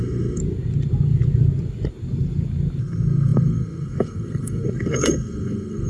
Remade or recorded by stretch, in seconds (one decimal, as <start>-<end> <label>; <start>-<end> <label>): 0.0-0.4 remade; 0.4-2.8 recorded; 2.8-5.9 remade